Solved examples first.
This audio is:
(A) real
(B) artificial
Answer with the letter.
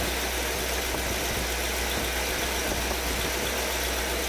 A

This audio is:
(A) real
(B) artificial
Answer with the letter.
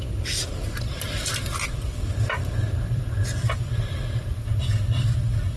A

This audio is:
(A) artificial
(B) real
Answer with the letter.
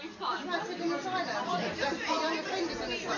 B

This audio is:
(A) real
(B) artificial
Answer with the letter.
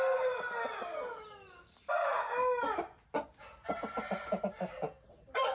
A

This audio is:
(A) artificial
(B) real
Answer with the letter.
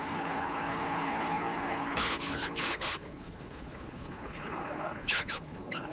A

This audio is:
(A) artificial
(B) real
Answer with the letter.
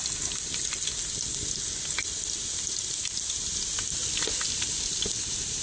B